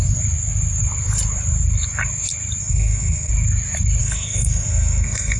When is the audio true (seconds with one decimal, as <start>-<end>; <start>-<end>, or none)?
0.0-2.6; 3.3-4.0

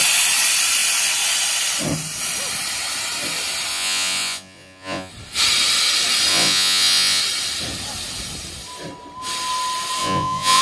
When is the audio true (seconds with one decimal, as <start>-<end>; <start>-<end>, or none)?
0.0-3.7; 5.1-6.3; 7.2-10.0

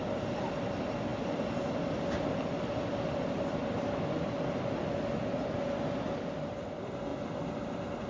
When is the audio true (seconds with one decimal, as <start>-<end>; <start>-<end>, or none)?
0.0-8.1

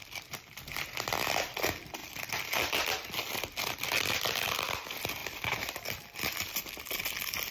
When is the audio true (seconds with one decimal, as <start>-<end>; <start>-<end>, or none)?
0.0-7.5

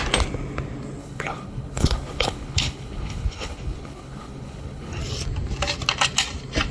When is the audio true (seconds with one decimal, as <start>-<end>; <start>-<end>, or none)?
0.0-1.0; 5.0-6.7

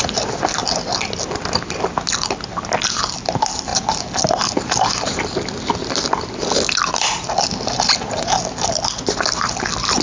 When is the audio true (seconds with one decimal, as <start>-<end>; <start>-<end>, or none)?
0.0-10.0

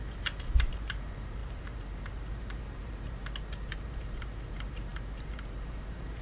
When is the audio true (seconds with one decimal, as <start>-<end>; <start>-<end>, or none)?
3.2-3.7

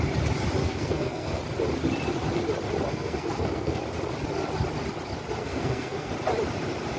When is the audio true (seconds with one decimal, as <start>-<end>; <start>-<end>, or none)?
0.0-0.6; 1.4-2.9; 3.8-5.4; 6.1-7.0